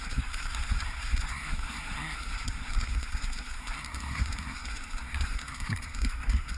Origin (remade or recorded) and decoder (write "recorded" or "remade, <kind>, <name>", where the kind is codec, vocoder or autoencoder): remade, codec, SNAC